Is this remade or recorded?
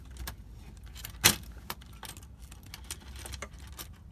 recorded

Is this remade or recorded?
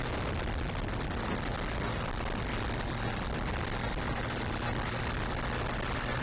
recorded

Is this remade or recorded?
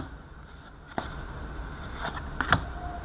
recorded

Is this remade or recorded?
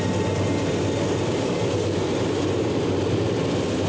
recorded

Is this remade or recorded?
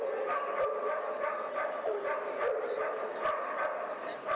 remade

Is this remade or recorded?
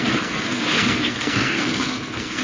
remade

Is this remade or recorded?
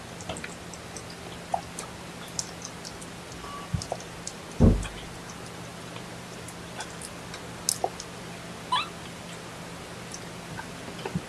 recorded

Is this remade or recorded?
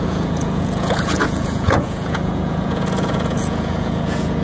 remade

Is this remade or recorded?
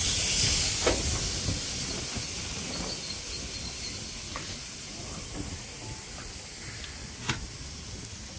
recorded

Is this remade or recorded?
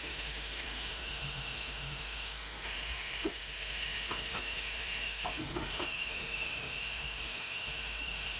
remade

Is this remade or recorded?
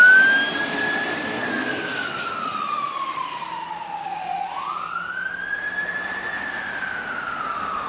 recorded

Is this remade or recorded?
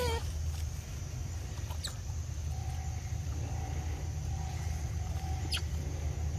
recorded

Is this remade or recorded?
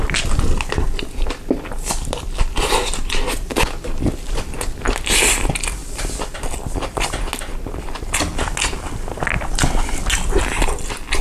recorded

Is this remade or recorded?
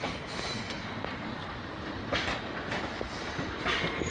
recorded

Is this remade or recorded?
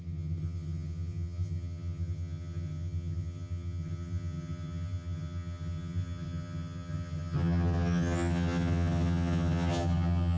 remade